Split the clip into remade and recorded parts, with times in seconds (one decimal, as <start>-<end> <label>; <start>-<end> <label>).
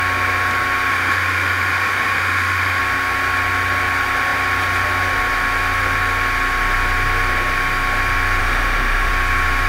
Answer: 0.0-0.9 recorded; 0.9-2.8 remade; 2.8-8.4 recorded; 8.4-9.1 remade; 9.1-9.7 recorded